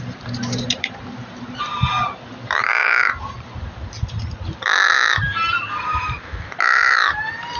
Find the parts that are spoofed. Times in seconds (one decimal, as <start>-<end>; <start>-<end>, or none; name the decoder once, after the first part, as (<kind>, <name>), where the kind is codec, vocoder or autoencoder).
0.0-1.7 (vocoder, BigVGAN v2); 2.3-2.7; 5.8-7.6